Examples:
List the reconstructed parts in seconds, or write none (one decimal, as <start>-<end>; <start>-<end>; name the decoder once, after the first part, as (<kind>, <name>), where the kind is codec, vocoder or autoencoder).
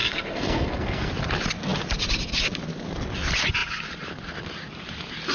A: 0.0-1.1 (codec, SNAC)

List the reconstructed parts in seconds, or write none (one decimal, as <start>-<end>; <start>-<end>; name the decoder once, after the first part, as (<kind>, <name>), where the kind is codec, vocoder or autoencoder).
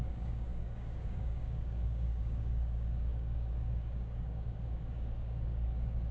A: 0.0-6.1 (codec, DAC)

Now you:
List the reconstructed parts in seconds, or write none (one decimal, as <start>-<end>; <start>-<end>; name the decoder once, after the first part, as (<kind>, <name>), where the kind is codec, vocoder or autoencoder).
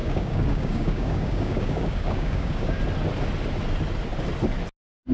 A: 0.0-2.8 (codec, DAC)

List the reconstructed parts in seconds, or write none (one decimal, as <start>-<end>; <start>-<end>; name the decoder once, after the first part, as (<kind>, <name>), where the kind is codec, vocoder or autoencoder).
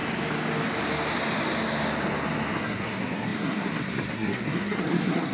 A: 2.5-5.3 (codec, SNAC)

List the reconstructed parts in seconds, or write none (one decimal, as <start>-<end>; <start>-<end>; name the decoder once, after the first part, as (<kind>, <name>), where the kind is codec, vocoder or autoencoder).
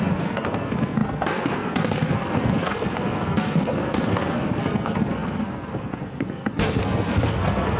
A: 0.0-7.8 (codec, SNAC)